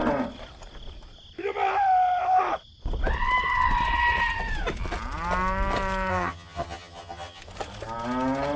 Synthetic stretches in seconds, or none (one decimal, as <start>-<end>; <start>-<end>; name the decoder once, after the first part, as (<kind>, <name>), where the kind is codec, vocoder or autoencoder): 6.1-7.4 (vocoder, HiFi-GAN)